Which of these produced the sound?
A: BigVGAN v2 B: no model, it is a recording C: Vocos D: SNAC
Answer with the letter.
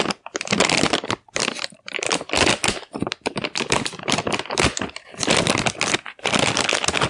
A